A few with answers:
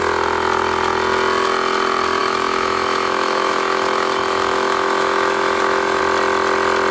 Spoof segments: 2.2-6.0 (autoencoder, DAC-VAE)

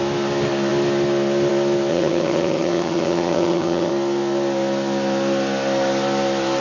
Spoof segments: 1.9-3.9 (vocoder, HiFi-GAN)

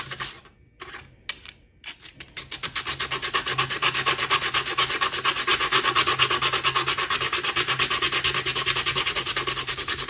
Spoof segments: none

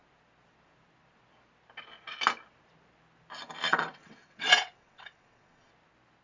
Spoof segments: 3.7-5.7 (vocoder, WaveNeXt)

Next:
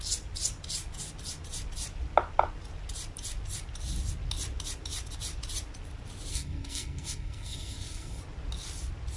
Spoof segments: 6.3-8.2 (codec, SNAC)